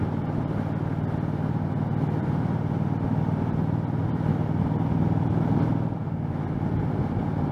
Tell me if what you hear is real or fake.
real